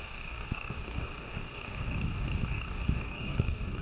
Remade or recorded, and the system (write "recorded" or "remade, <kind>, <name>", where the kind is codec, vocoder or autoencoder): remade, codec, DAC